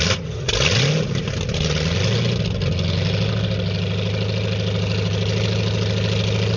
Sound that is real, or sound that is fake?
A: real